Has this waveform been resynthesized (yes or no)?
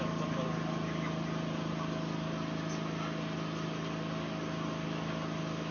no